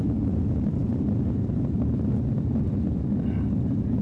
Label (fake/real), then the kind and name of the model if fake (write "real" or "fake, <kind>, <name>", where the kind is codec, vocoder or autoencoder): fake, vocoder, BigVGAN v2